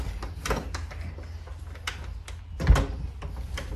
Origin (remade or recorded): recorded